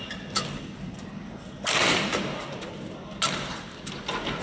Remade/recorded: recorded